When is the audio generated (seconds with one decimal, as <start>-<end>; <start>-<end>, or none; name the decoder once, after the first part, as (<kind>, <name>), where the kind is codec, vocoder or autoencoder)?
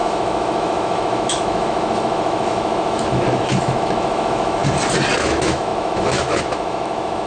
0.0-4.6 (autoencoder, DAC-VAE); 5.2-7.3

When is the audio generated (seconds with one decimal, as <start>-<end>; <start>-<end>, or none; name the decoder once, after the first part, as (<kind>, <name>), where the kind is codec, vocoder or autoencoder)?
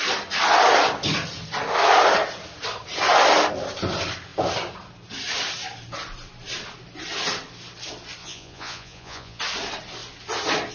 8.2-9.4 (vocoder, Vocos)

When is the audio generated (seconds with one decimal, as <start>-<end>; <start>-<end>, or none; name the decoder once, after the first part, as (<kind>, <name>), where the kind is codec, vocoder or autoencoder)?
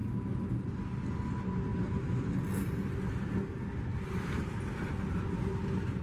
none